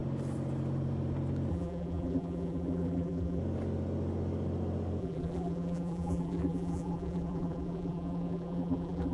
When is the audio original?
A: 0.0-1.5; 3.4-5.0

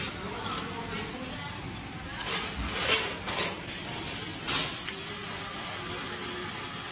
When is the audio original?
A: 0.0-6.9